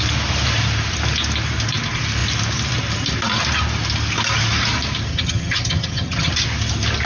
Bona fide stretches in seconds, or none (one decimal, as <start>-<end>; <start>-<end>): 0.0-5.1; 6.3-7.1